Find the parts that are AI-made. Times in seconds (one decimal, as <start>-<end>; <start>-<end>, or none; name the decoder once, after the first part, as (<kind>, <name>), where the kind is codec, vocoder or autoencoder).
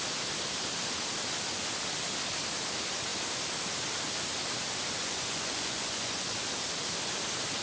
5.0-6.3 (vocoder, Vocos)